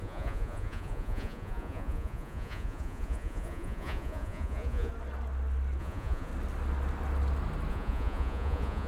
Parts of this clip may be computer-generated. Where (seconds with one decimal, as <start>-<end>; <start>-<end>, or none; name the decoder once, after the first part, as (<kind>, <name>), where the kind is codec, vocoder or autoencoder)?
0.0-4.9 (vocoder, Vocos); 5.8-6.3; 7.7-8.9